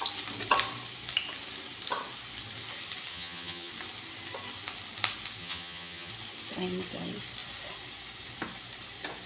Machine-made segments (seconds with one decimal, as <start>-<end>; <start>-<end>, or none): 3.1-3.7; 5.4-6.1